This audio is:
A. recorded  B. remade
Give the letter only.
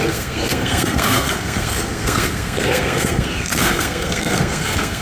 B